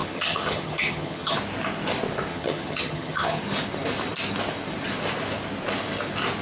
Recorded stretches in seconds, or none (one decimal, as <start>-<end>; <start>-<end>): 1.4-2.3; 3.4-6.4